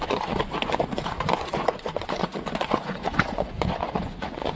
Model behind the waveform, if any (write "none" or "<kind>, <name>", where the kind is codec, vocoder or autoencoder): vocoder, Vocos